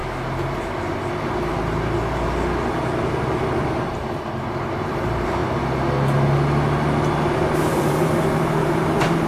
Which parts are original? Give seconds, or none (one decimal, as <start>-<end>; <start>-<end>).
0.0-3.6; 5.4-7.7